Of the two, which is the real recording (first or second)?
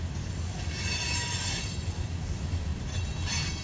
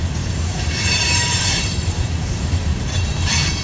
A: first